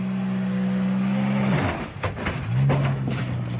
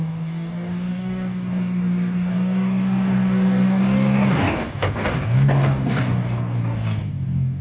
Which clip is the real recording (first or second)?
first